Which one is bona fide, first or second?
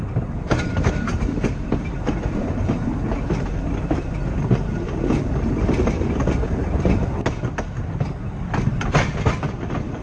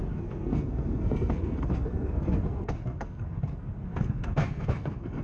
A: first